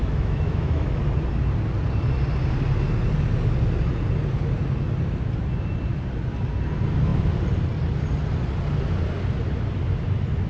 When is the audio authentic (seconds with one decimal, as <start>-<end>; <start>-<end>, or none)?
1.0-10.5